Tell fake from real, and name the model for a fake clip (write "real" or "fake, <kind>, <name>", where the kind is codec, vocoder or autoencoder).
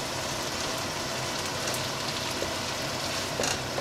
real